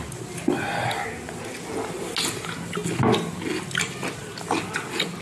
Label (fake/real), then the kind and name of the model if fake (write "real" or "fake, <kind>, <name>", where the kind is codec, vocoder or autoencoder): real